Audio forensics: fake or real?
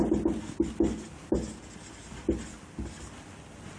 real